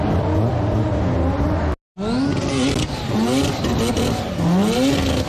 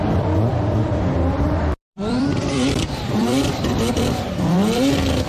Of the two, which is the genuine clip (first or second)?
first